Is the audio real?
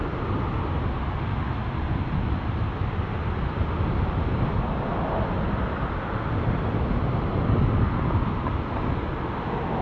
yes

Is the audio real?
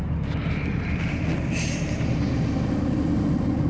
yes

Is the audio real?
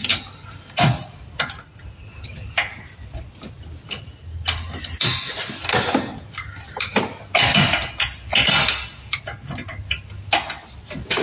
yes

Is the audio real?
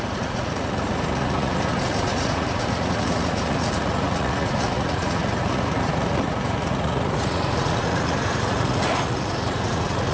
no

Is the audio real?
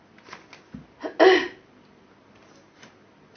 yes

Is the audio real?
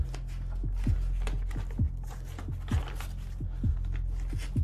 yes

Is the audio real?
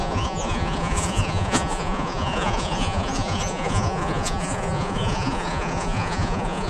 no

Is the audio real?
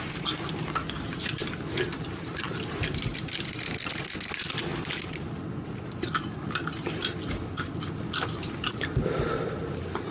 yes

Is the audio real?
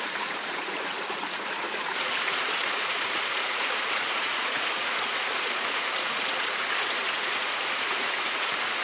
no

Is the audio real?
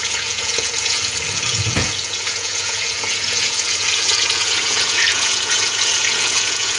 no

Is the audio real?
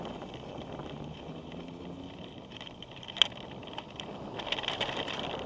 yes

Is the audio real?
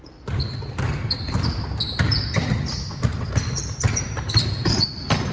yes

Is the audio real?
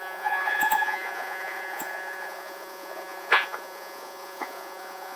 no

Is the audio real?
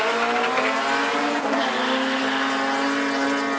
yes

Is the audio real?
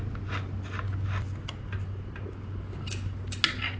yes